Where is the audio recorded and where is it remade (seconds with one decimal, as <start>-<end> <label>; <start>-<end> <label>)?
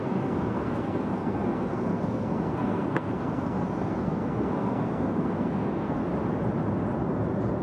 0.0-6.0 remade; 6.0-7.6 recorded